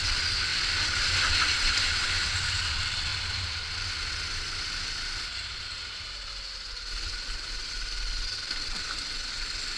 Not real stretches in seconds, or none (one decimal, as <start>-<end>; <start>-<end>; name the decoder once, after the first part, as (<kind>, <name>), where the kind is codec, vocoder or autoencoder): none